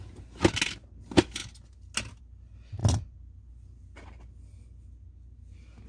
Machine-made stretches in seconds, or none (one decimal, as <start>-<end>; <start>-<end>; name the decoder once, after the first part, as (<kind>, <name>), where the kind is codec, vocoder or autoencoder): none